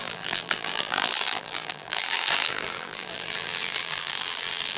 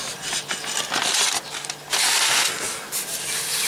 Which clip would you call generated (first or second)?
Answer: first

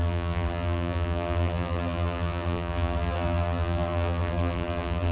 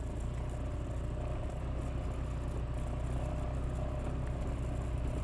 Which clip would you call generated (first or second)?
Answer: first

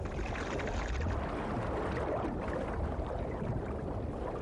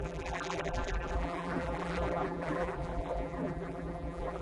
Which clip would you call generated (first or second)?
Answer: second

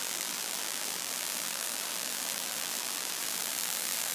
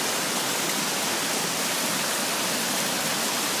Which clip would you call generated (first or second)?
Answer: first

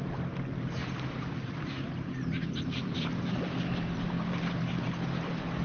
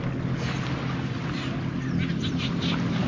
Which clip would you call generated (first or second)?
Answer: first